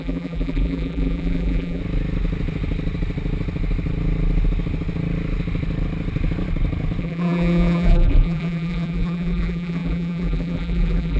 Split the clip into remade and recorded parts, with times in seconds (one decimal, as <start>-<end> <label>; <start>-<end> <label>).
0.0-1.8 remade; 1.8-7.0 recorded; 7.0-11.2 remade